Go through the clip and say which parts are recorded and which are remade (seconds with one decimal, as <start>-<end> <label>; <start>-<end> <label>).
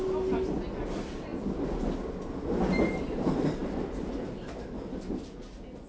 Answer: 0.0-5.9 recorded